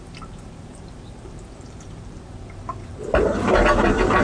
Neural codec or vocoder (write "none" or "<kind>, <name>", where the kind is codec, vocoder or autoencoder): vocoder, BigVGAN v2